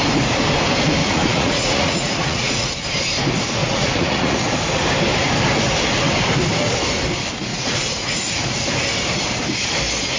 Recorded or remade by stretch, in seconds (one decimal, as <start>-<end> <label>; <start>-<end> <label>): 0.0-1.0 recorded; 1.0-2.7 remade; 2.7-3.6 recorded; 3.6-4.5 remade; 4.5-7.5 recorded; 7.5-8.4 remade; 8.4-10.2 recorded